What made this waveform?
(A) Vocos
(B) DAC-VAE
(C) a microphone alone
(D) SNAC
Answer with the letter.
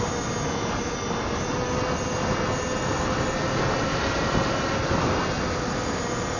C